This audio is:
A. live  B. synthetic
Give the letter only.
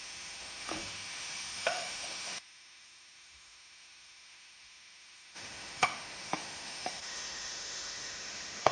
B